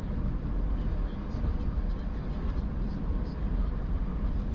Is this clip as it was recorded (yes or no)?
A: yes